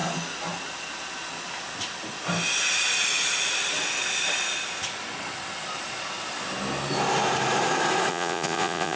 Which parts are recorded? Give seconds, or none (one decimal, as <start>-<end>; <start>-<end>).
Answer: 0.0-8.1